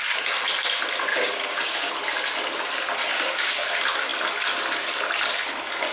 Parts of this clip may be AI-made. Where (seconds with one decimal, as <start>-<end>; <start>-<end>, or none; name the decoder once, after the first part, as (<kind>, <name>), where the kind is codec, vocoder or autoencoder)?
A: 1.1-1.9 (codec, DAC); 3.1-3.6